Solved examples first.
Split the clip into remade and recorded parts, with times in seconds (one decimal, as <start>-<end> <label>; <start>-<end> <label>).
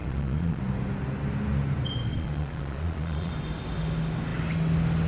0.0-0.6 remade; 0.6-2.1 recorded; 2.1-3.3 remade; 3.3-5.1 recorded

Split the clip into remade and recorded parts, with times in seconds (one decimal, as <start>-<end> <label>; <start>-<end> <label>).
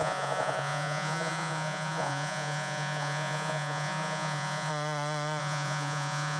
0.0-4.7 remade; 4.7-5.4 recorded; 5.4-6.4 remade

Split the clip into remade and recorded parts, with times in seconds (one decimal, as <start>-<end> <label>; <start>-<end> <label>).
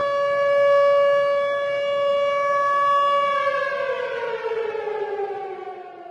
0.0-6.1 recorded